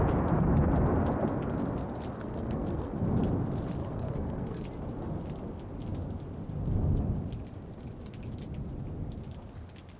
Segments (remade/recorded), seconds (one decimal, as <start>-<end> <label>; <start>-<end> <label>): 0.0-2.2 recorded; 2.2-3.0 remade; 3.0-3.8 recorded; 3.8-4.6 remade; 4.6-10.0 recorded